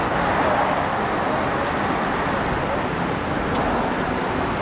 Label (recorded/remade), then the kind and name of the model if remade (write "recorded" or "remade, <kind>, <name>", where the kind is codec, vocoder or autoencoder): recorded